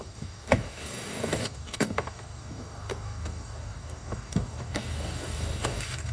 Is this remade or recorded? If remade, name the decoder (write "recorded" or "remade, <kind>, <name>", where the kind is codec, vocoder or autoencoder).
remade, codec, DAC